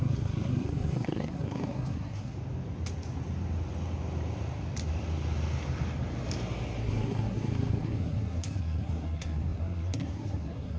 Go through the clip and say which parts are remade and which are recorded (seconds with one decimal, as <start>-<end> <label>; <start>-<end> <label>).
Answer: 0.0-2.3 remade; 2.3-6.8 recorded; 6.8-10.8 remade